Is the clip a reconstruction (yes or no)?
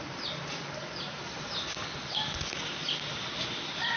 no